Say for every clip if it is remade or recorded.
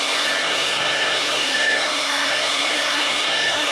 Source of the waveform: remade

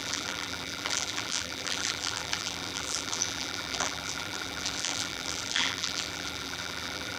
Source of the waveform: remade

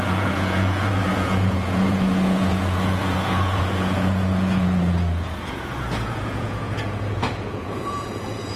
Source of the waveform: remade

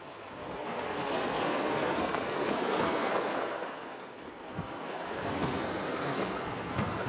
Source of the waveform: remade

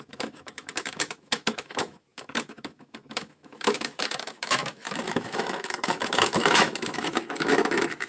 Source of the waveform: remade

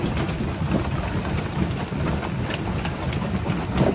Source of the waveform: remade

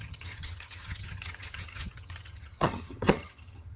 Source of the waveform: remade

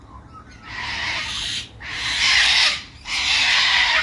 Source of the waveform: remade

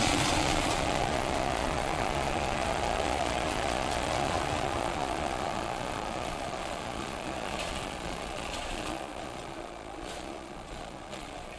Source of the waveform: remade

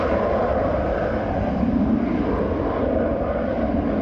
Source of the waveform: recorded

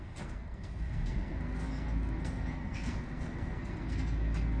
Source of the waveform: remade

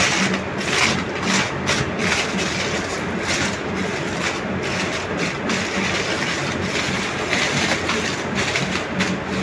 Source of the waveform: recorded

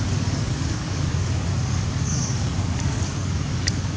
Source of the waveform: remade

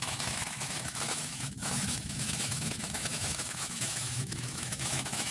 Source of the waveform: remade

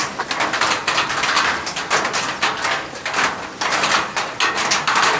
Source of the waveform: recorded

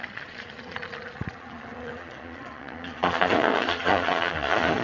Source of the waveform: remade